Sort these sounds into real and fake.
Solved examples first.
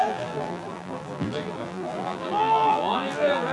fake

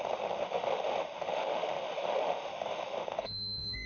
fake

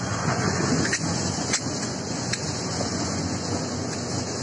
fake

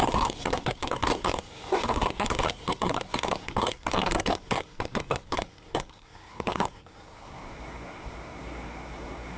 fake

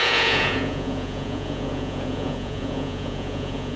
fake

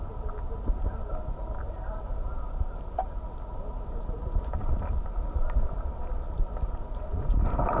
real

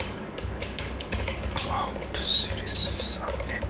fake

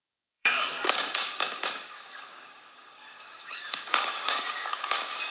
fake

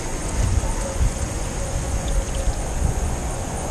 fake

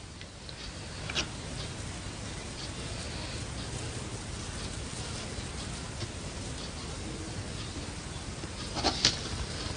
real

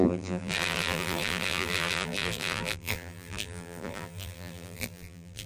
fake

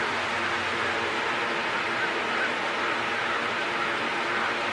real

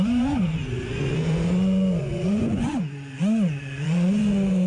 fake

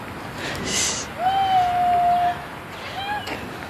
real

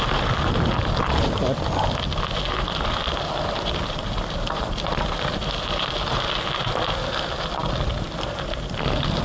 real